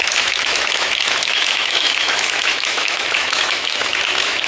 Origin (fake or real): fake